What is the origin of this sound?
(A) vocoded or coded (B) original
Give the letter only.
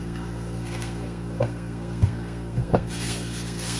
A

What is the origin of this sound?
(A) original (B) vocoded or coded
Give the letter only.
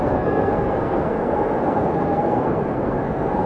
B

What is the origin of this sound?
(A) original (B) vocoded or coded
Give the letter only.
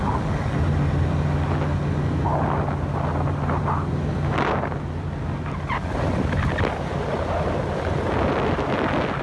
A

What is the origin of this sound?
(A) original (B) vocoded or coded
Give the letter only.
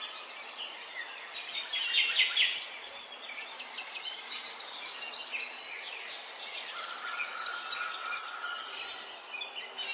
A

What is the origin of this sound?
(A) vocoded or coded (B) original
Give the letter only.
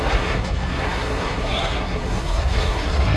A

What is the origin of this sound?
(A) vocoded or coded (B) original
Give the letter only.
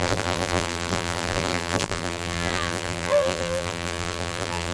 A